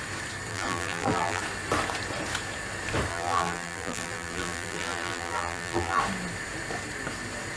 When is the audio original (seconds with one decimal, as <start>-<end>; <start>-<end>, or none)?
0.0-0.5; 1.4-3.1; 6.0-7.6